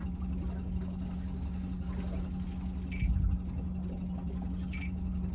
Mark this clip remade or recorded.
recorded